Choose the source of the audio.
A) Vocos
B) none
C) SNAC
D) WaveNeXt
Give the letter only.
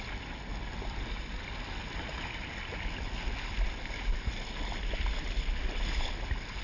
B